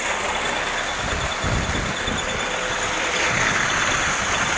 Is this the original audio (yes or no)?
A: yes